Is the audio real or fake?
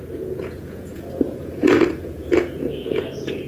fake